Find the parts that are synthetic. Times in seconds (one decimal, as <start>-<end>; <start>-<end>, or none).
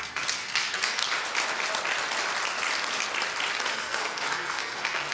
0.0-1.0; 3.7-5.1